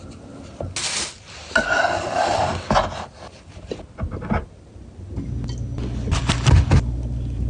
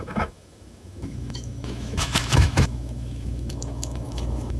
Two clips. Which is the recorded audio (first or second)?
first